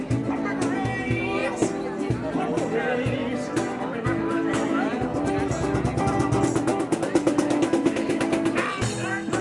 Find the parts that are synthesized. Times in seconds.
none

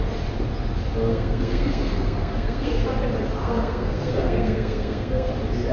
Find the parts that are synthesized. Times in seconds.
1.1-2.9 (codec, SNAC); 3.4-5.3

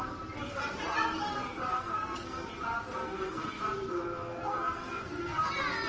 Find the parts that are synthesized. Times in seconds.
1.7-2.5 (codec, SNAC); 3.0-3.6; 4.4-5.5

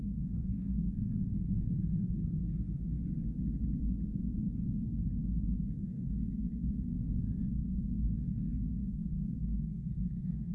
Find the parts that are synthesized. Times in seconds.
0.0-2.4 (codec, SNAC); 4.8-5.2; 5.8-10.5

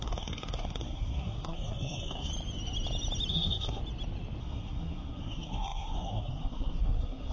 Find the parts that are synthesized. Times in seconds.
0.0-2.3 (codec, SNAC); 3.3-3.8; 4.4-7.3

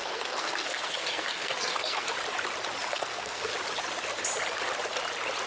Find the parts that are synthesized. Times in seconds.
0.0-2.1 (codec, SNAC); 2.9-3.5

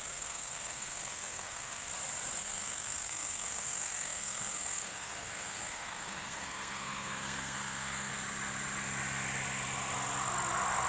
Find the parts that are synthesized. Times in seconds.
0.0-1.9 (codec, SNAC); 2.4-8.1